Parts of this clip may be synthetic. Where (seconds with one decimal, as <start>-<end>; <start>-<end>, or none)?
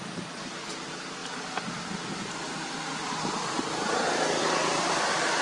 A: 0.0-1.2; 4.4-5.4